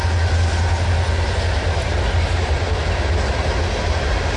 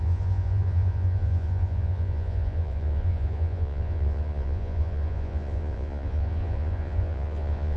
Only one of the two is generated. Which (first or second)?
second